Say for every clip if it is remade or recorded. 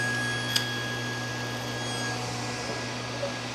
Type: recorded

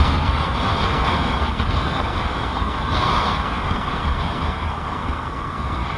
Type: remade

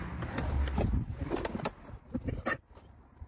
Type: recorded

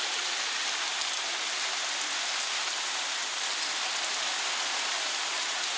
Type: recorded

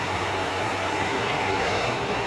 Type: remade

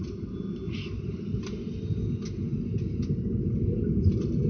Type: recorded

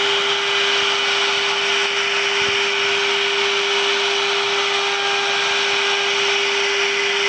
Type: recorded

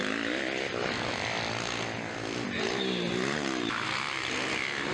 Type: recorded